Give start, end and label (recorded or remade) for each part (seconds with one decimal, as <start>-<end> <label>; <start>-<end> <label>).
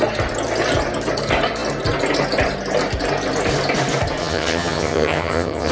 0.0-4.2 recorded; 4.2-5.7 remade